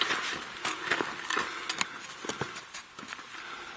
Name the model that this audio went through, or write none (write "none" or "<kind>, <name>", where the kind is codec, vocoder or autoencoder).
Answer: none